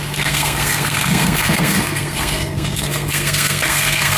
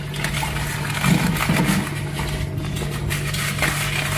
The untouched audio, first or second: second